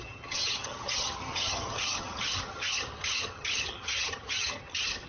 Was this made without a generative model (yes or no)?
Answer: no